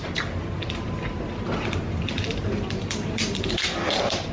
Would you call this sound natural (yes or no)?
no